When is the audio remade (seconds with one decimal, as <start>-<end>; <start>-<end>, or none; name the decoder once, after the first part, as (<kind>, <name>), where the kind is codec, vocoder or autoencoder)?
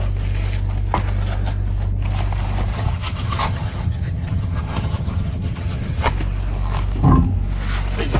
2.7-6.1 (vocoder, HiFi-GAN)